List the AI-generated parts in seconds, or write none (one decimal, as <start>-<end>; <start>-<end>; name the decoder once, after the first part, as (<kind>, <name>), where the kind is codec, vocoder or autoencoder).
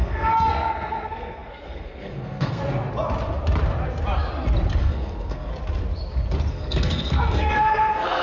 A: 0.0-2.6 (codec, SNAC); 4.8-5.5; 6.5-8.2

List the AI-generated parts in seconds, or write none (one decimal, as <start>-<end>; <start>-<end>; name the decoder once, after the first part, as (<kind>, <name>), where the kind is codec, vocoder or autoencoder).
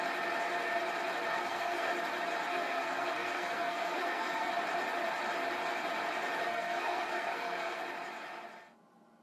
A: 1.3-1.9 (codec, SNAC); 2.5-4.5; 6.4-7.8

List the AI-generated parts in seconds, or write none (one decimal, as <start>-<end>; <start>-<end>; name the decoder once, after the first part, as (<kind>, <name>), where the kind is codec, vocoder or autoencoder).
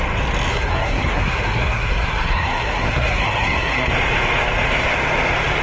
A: 0.5-3.9 (codec, SNAC)